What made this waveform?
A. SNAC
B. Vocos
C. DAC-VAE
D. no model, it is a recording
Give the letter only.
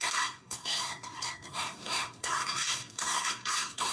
A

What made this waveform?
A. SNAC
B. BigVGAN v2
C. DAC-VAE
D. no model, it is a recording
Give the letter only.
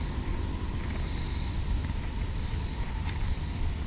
D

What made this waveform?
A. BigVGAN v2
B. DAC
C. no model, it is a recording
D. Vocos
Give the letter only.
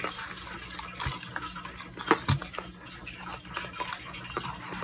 C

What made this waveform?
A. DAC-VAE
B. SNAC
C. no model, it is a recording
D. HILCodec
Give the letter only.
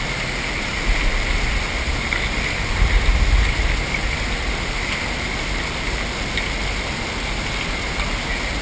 C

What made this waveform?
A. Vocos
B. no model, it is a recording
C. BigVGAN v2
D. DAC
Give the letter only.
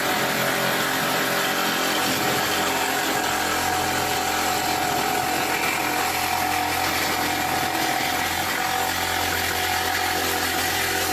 B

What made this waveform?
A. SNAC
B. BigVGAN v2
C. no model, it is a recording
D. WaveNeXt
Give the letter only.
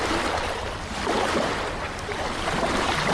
C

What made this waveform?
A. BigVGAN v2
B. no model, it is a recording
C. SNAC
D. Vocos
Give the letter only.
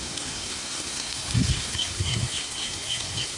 C